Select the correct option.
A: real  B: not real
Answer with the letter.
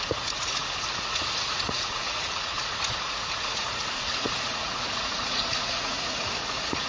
B